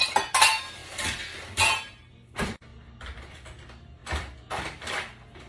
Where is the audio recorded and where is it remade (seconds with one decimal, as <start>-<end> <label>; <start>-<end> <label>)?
0.0-5.5 recorded